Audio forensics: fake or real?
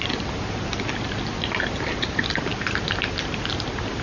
real